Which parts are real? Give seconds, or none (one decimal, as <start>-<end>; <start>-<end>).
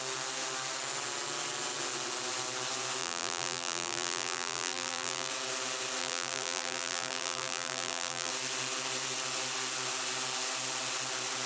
0.0-3.0; 5.3-6.0; 8.3-11.5